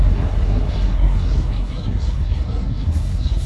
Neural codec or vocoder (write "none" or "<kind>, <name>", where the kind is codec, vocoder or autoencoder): codec, SNAC